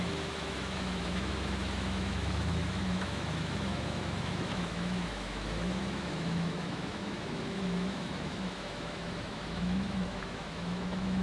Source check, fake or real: fake